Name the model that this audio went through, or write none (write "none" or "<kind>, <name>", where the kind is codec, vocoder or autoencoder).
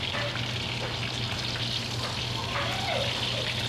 none